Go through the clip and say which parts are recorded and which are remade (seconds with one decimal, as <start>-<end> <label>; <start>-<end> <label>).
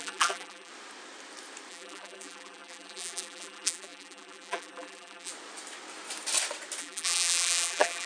0.0-0.7 remade; 0.7-1.7 recorded; 1.7-5.3 remade; 5.3-6.8 recorded; 6.8-8.1 remade